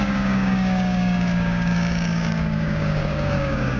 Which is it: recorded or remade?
remade